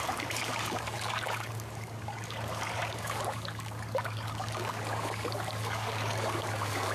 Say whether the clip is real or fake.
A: fake